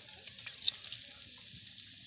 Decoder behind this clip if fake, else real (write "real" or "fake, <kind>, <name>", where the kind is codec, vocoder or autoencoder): real